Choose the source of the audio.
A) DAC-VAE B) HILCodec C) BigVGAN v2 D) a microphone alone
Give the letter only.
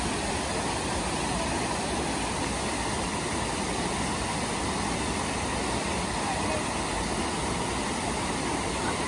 D